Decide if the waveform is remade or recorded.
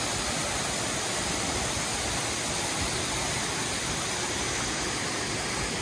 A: recorded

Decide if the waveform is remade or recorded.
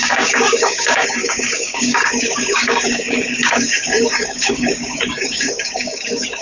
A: remade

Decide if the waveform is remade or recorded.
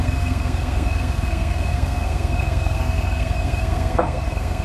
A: remade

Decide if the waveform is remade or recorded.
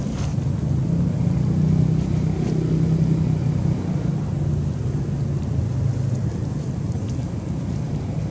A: recorded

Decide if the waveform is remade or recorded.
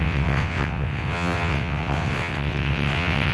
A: remade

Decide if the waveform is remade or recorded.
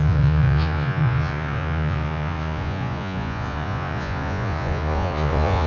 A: remade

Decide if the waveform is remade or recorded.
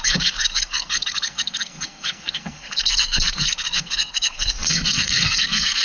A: remade